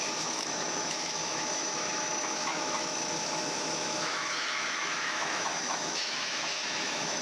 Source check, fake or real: fake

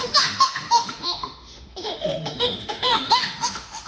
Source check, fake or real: fake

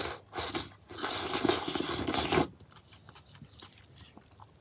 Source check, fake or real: real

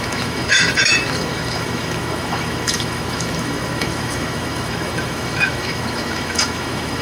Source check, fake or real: fake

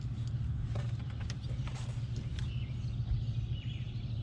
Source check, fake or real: real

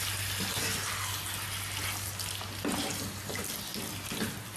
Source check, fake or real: real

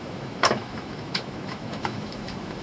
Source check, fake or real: fake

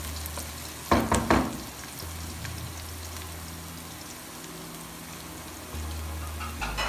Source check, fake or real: real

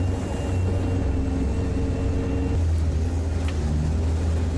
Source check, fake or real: real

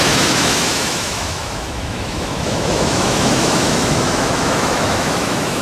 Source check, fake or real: fake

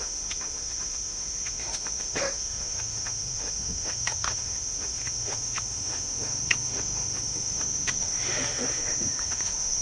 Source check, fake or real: fake